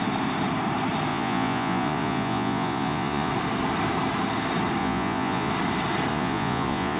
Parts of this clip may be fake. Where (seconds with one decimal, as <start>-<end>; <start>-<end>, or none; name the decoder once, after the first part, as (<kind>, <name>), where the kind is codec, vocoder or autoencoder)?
1.1-3.3 (vocoder, Vocos); 4.8-5.5; 6.1-7.0